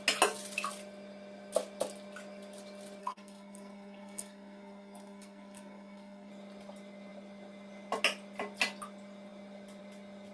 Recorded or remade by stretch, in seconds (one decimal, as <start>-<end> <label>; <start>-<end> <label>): 0.0-3.0 recorded; 3.0-6.3 remade; 6.3-10.3 recorded